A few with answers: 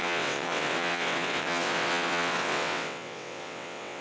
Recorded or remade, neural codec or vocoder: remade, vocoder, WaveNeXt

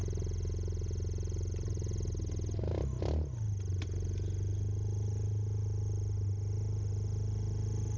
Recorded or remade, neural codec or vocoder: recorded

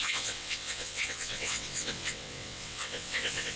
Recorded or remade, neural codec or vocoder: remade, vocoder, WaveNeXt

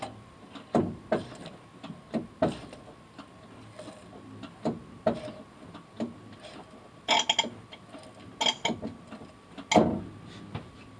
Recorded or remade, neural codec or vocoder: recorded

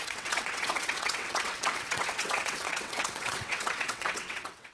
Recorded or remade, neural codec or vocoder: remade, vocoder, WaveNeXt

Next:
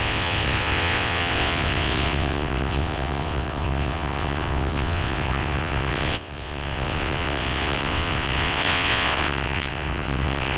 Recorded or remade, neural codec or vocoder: remade, vocoder, WaveNeXt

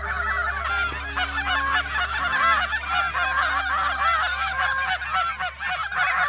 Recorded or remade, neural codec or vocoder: recorded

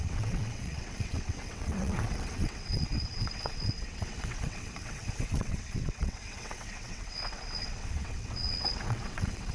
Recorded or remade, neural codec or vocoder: remade, vocoder, WaveNeXt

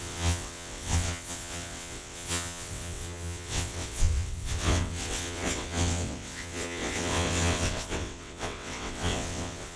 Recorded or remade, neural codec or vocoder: remade, vocoder, WaveNeXt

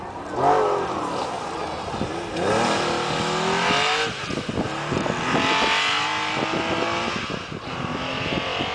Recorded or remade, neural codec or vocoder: recorded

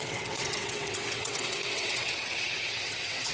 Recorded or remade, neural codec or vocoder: remade, vocoder, WaveNeXt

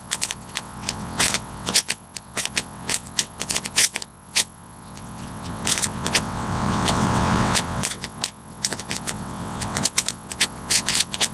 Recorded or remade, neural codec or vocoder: remade, vocoder, WaveNeXt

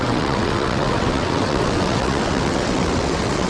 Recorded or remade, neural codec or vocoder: remade, vocoder, WaveNeXt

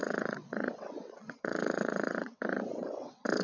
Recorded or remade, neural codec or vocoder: remade, vocoder, WaveNeXt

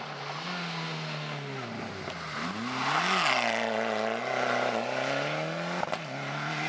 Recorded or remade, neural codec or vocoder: recorded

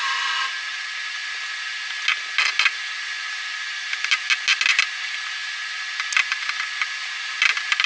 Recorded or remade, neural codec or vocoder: recorded